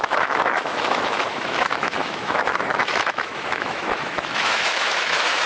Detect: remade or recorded remade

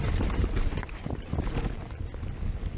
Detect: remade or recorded recorded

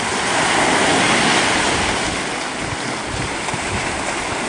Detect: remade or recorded recorded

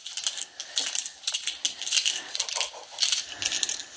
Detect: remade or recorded recorded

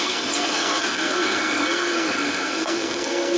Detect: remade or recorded remade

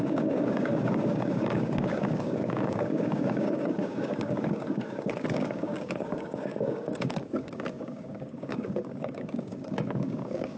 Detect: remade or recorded remade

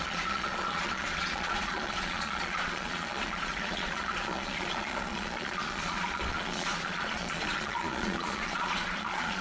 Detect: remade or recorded remade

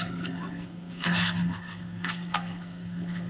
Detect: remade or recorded remade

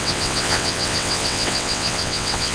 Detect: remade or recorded remade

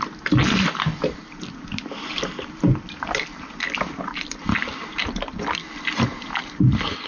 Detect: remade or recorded recorded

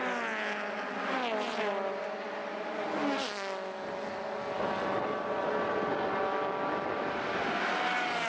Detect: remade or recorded recorded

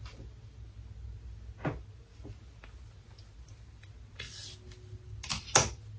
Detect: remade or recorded recorded